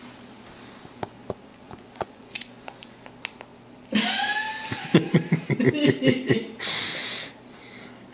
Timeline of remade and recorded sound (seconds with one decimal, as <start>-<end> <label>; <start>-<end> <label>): 0.0-1.5 recorded; 1.5-3.1 remade; 3.1-8.1 recorded